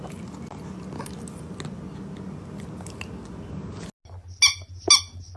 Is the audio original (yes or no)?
yes